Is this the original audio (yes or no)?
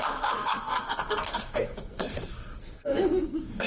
no